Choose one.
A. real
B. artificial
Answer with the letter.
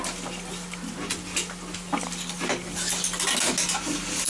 A